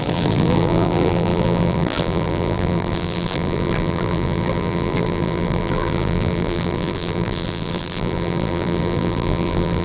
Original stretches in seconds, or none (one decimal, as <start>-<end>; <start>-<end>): none